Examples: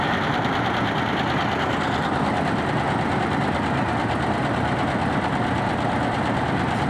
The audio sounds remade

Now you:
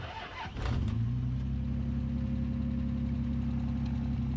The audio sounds recorded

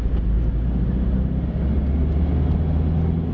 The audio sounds recorded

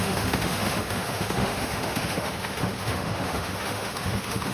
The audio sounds remade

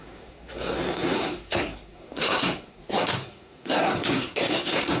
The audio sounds remade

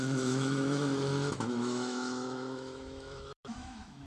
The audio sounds remade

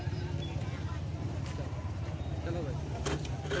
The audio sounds recorded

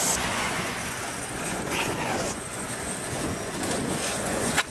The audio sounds remade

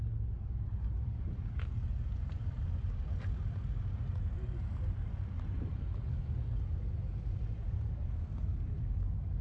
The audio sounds recorded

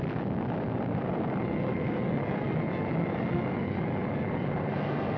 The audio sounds recorded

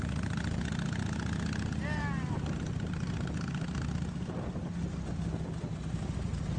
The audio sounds recorded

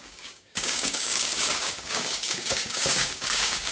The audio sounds remade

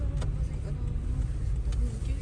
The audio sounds recorded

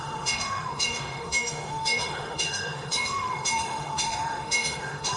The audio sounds remade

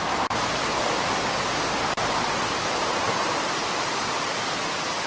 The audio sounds recorded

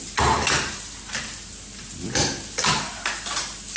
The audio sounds recorded